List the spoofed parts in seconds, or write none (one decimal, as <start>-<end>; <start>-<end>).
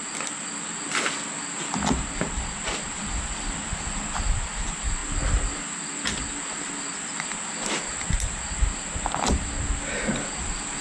none